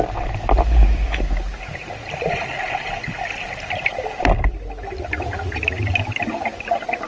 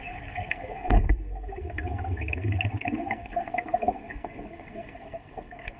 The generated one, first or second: second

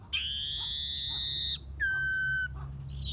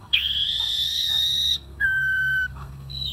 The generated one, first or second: second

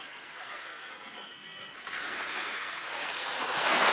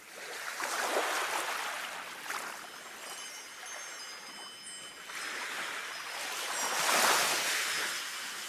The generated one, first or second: first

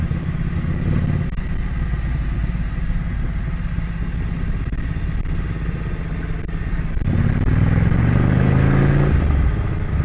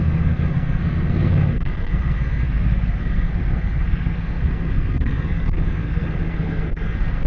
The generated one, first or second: second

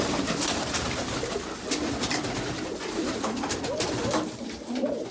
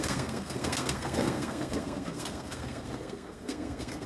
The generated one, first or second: second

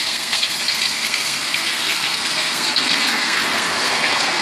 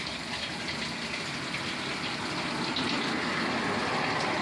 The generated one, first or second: first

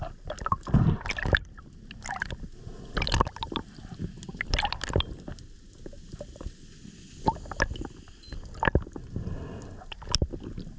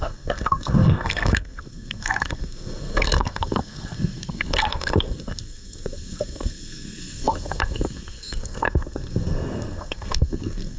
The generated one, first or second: second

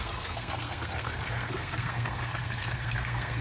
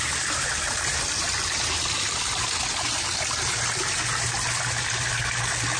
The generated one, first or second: first